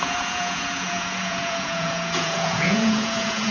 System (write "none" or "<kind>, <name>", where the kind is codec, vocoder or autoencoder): vocoder, Vocos